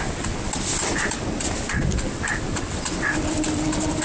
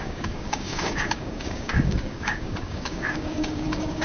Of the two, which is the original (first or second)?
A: first